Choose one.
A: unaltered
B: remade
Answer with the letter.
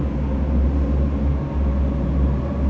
A